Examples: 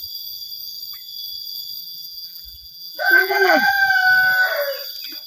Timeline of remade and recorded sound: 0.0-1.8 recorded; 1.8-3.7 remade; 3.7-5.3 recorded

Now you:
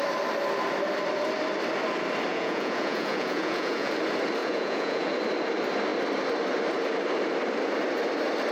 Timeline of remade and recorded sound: 0.0-2.3 recorded; 2.3-3.9 remade; 3.9-4.4 recorded; 4.4-5.1 remade; 5.1-8.5 recorded

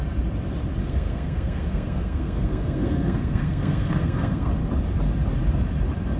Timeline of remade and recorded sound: 0.0-0.8 recorded; 0.8-4.5 remade; 4.5-6.2 recorded

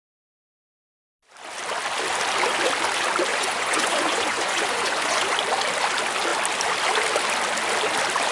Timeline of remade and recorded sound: 0.0-3.3 recorded; 3.3-5.3 remade; 5.3-8.3 recorded

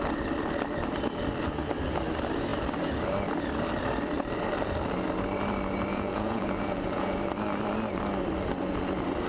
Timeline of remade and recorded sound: 0.0-5.9 recorded; 5.9-7.2 remade; 7.2-9.3 recorded

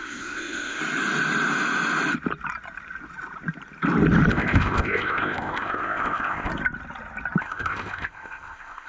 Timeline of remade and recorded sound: 0.0-0.8 remade; 0.8-4.3 recorded; 4.3-6.5 remade; 6.5-7.4 recorded; 7.4-8.9 remade